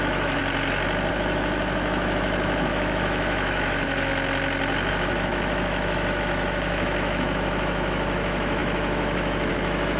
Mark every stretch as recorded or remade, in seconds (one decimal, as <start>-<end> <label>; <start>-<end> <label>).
0.0-0.4 remade; 0.4-1.1 recorded; 1.1-4.1 remade; 4.1-4.9 recorded; 4.9-10.0 remade